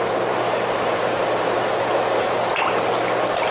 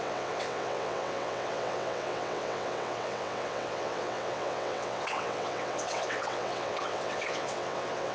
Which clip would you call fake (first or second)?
second